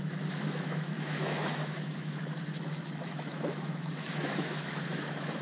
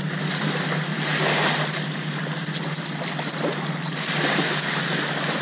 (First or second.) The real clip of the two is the second